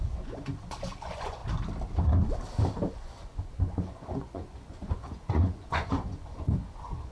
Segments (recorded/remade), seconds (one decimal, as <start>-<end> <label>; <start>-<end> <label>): 0.0-1.4 remade; 1.4-2.9 recorded; 2.9-7.1 remade